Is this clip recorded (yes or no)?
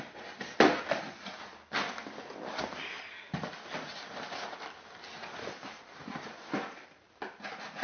yes